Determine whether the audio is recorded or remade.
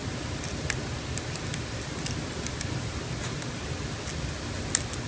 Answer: recorded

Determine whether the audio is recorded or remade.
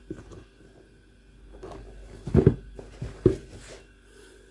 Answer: recorded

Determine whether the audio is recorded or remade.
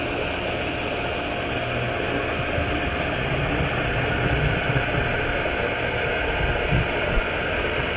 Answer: recorded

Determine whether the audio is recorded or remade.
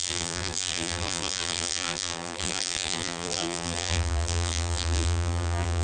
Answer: remade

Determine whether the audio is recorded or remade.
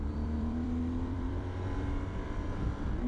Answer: remade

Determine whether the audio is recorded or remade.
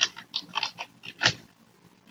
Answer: recorded